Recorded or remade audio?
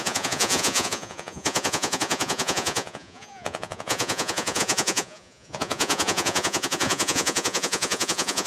remade